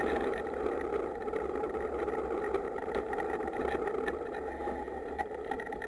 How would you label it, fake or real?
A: fake